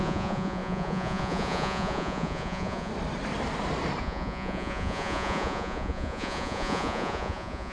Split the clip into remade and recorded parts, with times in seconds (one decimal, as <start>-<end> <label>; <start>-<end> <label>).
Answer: 0.0-2.9 remade; 2.9-4.0 recorded; 4.0-7.7 remade